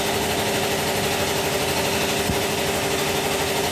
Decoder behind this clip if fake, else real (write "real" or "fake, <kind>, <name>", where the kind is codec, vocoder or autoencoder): real